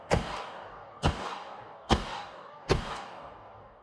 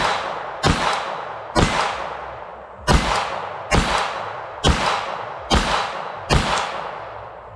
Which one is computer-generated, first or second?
first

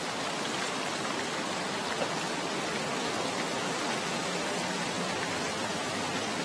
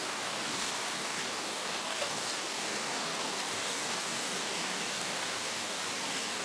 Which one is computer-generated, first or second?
second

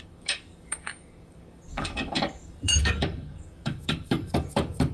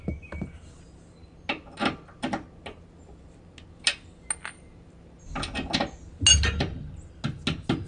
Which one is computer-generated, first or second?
first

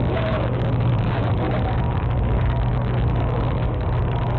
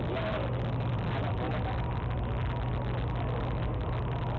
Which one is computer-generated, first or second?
first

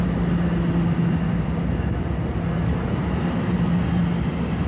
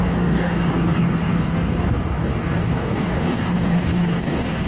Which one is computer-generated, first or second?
second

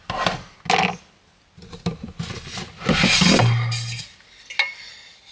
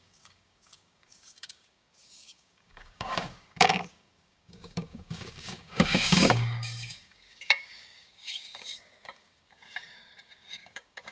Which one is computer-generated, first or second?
second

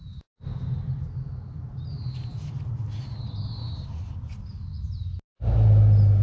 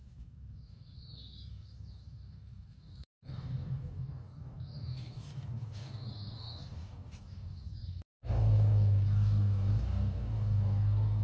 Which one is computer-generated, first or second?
second